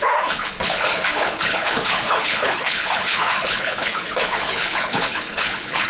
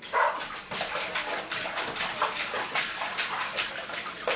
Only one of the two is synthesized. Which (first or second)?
first